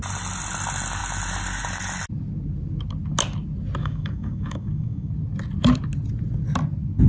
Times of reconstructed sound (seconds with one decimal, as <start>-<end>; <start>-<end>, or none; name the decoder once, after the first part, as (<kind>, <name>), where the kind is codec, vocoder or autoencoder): 3.8-5.1 (codec, DAC)